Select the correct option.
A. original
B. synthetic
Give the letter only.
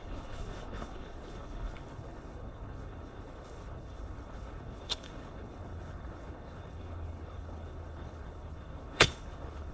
B